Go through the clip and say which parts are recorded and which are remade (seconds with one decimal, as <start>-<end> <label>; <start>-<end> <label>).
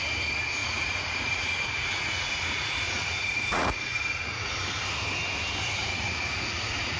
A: 0.0-0.6 recorded; 0.6-4.5 remade; 4.5-5.8 recorded; 5.8-7.0 remade